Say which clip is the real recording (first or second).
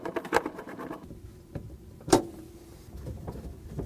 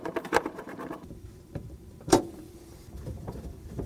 first